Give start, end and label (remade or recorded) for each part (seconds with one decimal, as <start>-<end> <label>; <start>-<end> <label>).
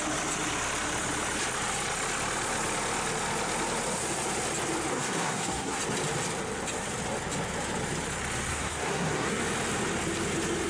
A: 0.0-4.9 recorded; 4.9-5.8 remade; 5.8-8.5 recorded; 8.5-9.4 remade; 9.4-10.7 recorded